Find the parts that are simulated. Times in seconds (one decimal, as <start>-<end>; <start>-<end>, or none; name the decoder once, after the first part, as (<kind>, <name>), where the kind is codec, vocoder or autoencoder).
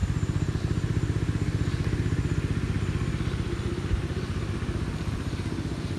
none